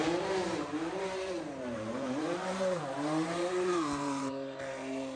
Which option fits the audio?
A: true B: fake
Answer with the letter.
B